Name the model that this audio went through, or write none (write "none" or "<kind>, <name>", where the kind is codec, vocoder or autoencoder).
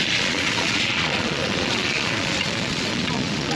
vocoder, Vocos